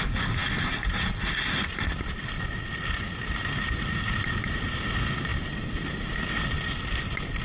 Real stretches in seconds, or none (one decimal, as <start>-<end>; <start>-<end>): 0.0-7.4

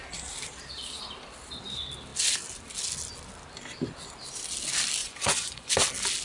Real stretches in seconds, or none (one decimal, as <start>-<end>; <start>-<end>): 0.0-5.0; 5.7-6.2